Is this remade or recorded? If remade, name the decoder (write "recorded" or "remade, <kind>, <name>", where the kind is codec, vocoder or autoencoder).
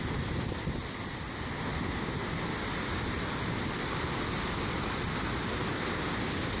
recorded